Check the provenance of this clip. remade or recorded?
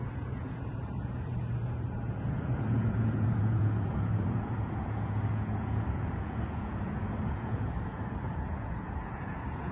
remade